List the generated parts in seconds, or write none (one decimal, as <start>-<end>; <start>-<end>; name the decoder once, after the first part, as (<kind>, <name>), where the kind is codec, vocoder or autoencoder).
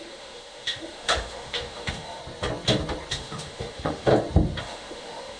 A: 0.0-2.2 (autoencoder, DAC-VAE); 3.1-4.1; 4.6-5.4